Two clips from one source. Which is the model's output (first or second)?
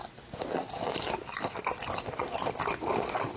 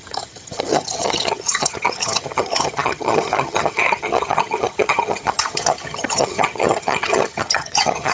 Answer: second